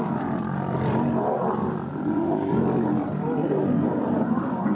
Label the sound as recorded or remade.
recorded